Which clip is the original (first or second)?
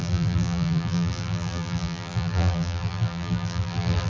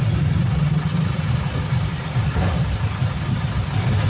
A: second